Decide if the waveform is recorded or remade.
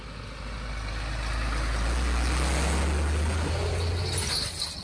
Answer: recorded